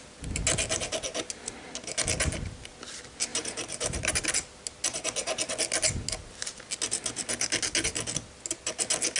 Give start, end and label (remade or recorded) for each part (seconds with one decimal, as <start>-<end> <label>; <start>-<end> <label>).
0.0-3.3 recorded; 3.3-4.3 remade; 4.3-9.2 recorded